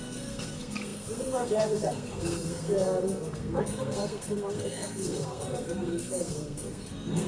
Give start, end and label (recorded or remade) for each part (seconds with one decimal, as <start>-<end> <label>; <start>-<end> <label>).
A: 0.0-7.3 remade